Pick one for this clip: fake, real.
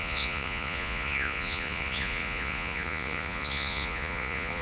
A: fake